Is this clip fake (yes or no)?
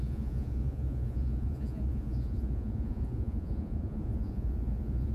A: yes